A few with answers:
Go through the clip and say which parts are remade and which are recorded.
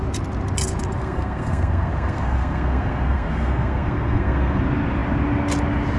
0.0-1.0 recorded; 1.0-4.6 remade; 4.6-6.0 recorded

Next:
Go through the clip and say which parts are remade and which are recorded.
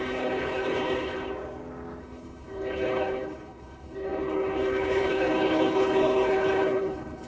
0.0-1.3 remade; 1.3-2.0 recorded; 2.0-7.3 remade